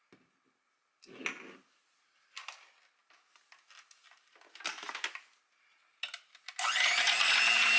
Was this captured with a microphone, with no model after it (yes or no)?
yes